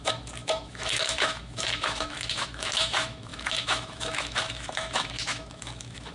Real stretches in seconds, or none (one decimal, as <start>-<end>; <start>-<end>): none